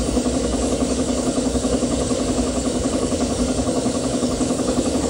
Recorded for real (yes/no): no